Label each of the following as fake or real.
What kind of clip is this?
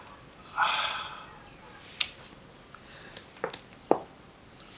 real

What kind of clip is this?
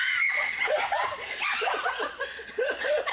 fake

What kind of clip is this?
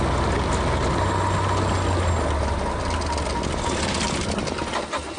real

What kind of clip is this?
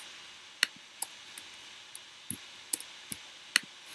real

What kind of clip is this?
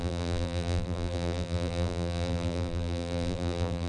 fake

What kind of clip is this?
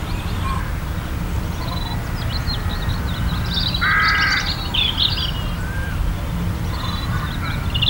real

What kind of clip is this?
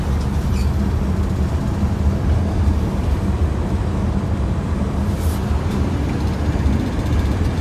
real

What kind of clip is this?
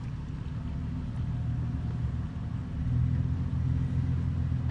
real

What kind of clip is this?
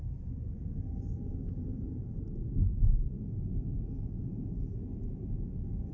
real